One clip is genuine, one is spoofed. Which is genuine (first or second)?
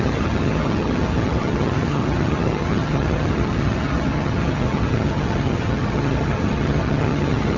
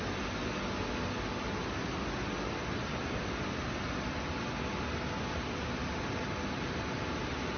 second